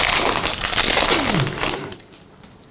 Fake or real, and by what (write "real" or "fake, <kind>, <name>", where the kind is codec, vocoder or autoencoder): real